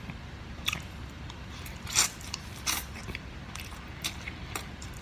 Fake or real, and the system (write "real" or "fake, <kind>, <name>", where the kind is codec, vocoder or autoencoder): fake, vocoder, BigVGAN v2